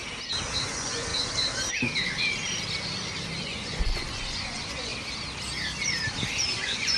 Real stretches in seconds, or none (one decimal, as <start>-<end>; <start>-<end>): 0.0-0.6; 1.1-3.4; 4.9-6.5